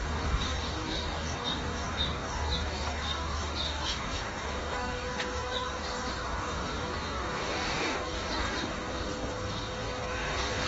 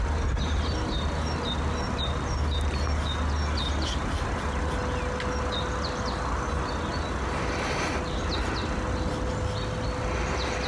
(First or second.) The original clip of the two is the second